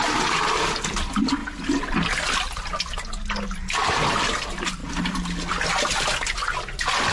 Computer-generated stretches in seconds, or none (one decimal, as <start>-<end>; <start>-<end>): none